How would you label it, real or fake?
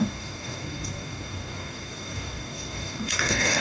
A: fake